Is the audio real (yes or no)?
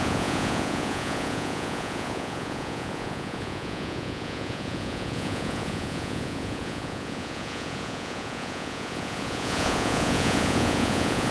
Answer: no